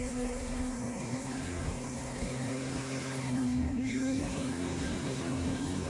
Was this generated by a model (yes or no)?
yes